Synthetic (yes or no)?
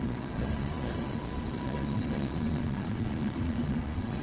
yes